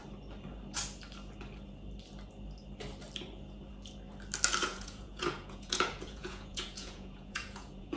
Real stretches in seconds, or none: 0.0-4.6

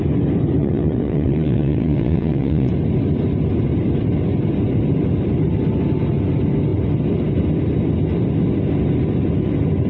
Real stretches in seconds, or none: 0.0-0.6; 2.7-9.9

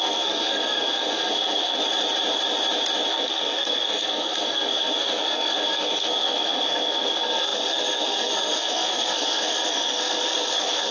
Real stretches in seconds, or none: 1.8-3.1

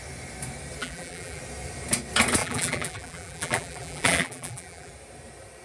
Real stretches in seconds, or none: 0.0-0.8; 1.4-2.4; 4.9-5.6

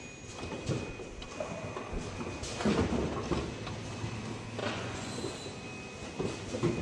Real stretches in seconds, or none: 0.0-4.6; 5.2-6.8

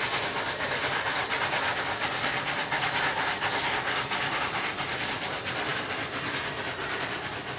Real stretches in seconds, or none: 0.0-7.6